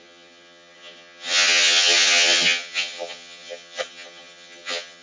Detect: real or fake fake